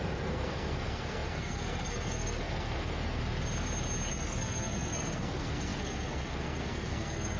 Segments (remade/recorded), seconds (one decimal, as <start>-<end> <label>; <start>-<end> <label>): 0.0-3.2 remade; 3.2-4.1 recorded; 4.1-7.4 remade